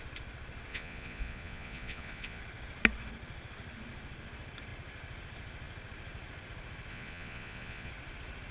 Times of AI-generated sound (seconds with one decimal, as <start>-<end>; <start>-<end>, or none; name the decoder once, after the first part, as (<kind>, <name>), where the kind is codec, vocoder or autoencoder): 0.7-2.4 (vocoder, Vocos); 6.9-7.9